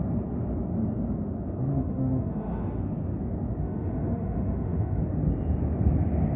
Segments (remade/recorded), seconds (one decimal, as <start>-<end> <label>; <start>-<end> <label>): 0.0-1.7 recorded; 1.7-2.8 remade; 2.8-3.6 recorded; 3.6-5.0 remade; 5.0-6.4 recorded

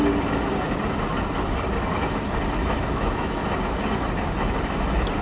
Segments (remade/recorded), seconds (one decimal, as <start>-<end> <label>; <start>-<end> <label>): 0.0-2.6 recorded; 2.6-3.4 remade; 3.4-4.7 recorded; 4.7-5.2 remade

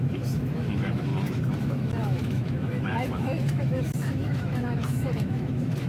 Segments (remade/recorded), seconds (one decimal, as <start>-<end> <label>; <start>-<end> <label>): 0.0-1.1 remade; 1.1-1.6 recorded; 1.6-5.9 remade

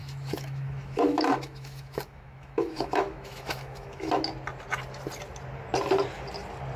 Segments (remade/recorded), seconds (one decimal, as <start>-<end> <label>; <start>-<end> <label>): 0.0-4.1 remade; 4.1-6.8 recorded

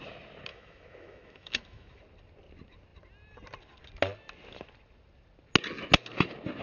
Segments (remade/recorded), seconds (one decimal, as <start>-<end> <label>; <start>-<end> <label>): 0.0-0.5 recorded; 0.5-2.0 remade; 2.0-6.6 recorded

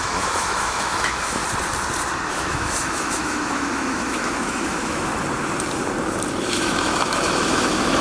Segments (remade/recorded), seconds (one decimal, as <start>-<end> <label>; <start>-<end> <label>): 0.0-1.4 remade; 1.4-2.3 recorded; 2.3-5.1 remade; 5.1-6.4 recorded; 6.4-8.0 remade